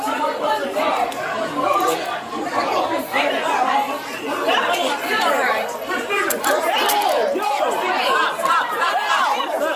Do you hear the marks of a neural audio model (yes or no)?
yes